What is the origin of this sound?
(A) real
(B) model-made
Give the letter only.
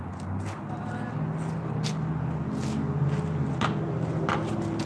A